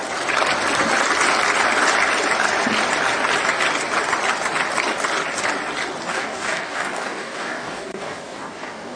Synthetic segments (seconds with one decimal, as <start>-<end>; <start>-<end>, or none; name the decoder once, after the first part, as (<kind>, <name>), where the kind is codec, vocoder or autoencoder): 6.1-9.0 (codec, DAC)